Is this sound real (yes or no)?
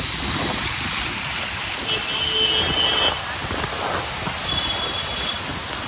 yes